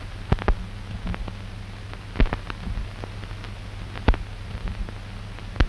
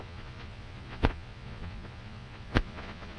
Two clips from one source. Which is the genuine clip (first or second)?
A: first